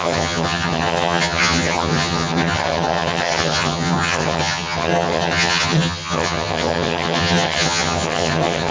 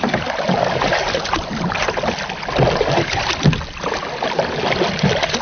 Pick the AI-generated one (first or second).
first